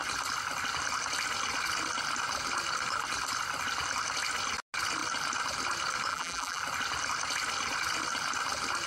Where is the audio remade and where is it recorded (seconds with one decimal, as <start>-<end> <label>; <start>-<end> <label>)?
0.0-6.1 recorded; 6.1-6.6 remade; 6.6-8.9 recorded